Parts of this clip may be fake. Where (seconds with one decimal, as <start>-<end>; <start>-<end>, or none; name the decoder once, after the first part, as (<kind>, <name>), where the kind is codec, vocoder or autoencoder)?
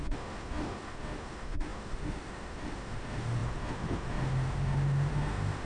0.0-5.7 (autoencoder, DAC-VAE)